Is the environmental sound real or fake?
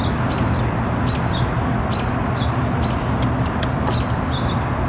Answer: real